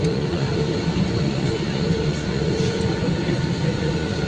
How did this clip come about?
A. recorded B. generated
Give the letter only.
B